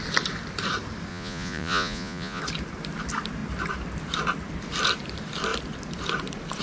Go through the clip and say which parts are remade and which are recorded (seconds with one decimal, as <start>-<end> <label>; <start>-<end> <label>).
0.0-1.1 recorded; 1.1-2.4 remade; 2.4-6.6 recorded